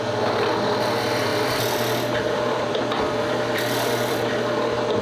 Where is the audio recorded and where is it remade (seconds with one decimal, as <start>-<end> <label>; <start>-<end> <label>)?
0.0-1.3 recorded; 1.3-4.3 remade; 4.3-5.0 recorded